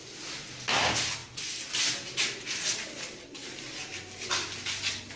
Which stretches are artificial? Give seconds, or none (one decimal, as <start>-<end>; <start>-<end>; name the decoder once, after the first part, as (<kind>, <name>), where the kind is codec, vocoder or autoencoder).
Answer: none